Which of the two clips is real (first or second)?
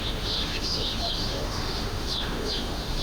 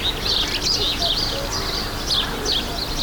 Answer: second